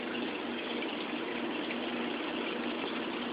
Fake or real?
real